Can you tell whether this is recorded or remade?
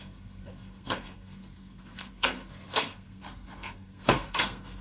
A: remade